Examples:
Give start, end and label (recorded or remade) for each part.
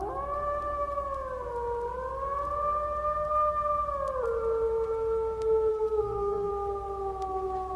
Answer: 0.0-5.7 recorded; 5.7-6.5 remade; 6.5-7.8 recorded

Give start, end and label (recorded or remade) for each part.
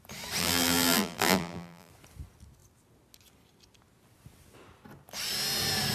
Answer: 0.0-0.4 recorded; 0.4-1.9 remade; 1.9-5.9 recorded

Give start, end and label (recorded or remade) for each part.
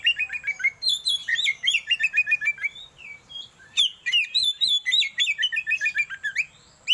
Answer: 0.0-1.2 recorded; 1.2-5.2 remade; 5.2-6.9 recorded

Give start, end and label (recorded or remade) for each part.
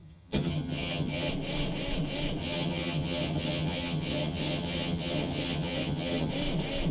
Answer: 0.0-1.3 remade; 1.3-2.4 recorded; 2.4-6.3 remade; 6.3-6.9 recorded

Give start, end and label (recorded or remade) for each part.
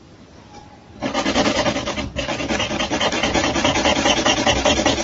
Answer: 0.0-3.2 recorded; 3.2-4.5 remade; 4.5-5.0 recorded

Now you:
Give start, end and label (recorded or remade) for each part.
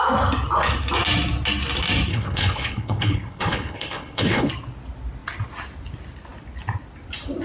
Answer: 0.0-2.1 recorded; 2.1-4.5 remade; 4.5-7.4 recorded